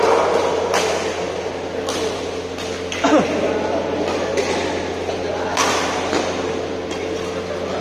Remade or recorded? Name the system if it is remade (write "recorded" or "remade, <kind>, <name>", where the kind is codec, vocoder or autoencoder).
recorded